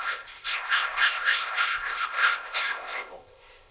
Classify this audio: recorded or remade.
remade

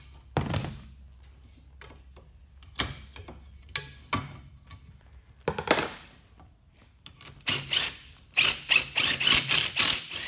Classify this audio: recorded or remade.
recorded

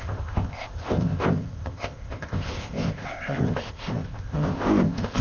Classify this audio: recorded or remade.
remade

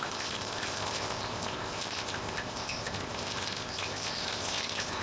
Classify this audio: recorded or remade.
remade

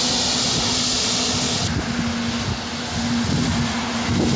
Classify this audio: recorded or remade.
recorded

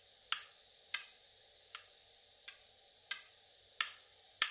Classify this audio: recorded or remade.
recorded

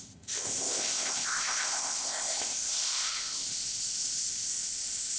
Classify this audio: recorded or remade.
remade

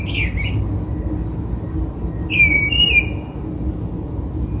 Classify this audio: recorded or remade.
recorded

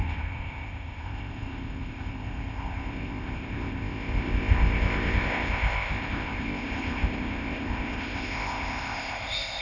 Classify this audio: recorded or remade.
remade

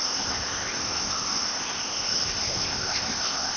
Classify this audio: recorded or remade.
remade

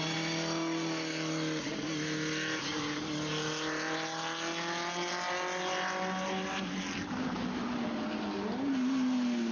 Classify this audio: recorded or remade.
recorded